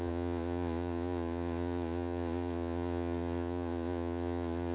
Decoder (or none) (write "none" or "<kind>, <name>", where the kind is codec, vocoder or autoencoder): vocoder, Vocos